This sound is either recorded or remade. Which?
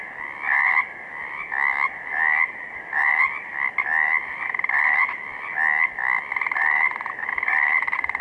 recorded